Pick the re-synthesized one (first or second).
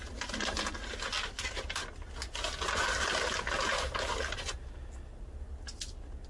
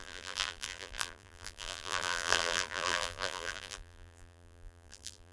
second